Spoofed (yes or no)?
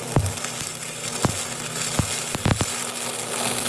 no